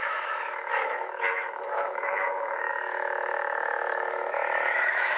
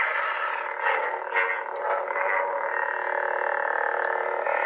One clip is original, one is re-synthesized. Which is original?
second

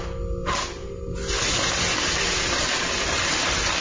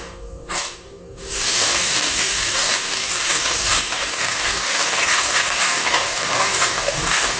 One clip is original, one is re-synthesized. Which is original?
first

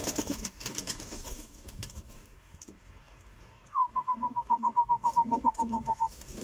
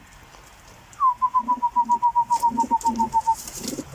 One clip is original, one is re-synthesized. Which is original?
second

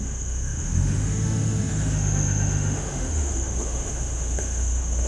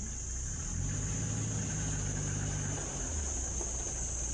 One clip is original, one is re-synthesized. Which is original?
second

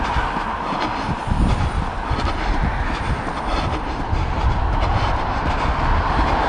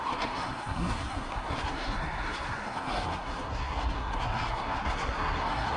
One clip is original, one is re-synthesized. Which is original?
first